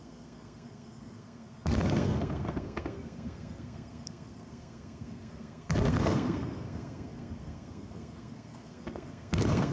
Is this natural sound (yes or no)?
no